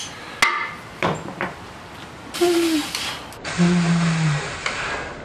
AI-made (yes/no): no